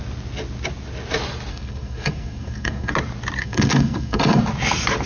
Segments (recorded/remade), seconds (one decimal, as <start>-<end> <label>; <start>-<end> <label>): 0.0-1.5 recorded; 1.5-2.9 remade; 2.9-3.4 recorded; 3.4-4.4 remade; 4.4-5.1 recorded